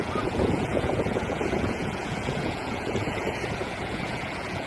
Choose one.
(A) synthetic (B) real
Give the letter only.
A